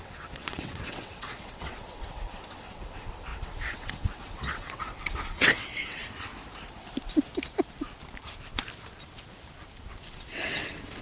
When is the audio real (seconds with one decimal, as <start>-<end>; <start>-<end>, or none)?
6.3-10.1